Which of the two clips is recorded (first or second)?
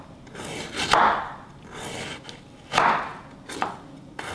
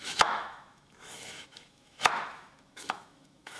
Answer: first